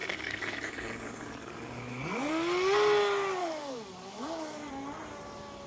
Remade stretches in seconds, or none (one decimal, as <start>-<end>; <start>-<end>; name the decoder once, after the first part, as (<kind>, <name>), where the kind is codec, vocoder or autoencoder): 0.0-2.3 (codec, DAC); 3.4-4.7